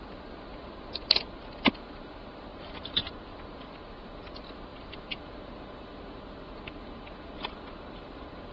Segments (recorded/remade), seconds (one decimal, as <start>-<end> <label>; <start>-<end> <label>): 0.0-2.5 recorded; 2.5-3.0 remade; 3.0-4.7 recorded; 4.7-5.2 remade; 5.2-8.5 recorded